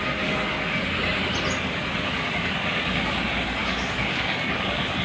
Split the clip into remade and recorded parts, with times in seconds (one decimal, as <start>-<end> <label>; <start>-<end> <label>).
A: 0.0-0.8 remade; 0.8-1.6 recorded; 1.6-5.0 remade